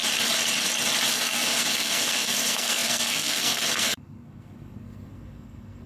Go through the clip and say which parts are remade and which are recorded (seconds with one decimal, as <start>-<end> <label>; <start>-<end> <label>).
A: 0.0-1.1 recorded; 1.1-5.9 remade